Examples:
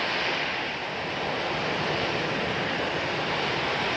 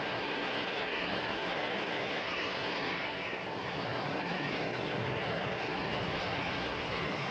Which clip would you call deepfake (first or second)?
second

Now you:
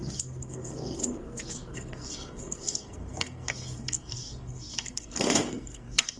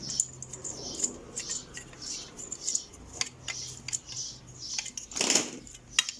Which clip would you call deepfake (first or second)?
first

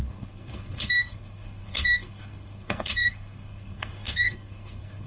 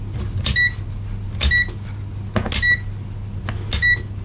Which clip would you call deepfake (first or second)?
first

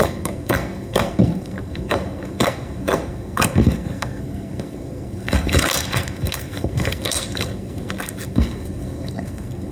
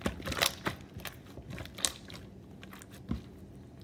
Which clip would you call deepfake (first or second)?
first